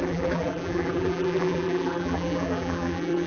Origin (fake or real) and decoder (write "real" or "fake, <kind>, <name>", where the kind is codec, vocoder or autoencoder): fake, vocoder, BigVGAN v2